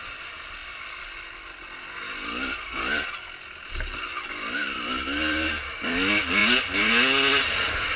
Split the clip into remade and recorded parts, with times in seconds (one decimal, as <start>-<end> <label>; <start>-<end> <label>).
0.0-0.6 recorded; 0.6-1.5 remade; 1.5-8.0 recorded